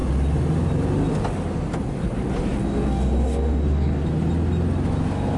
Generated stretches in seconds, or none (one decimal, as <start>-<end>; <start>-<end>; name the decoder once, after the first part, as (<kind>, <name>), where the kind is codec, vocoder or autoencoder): 2.6-4.0 (codec, DAC)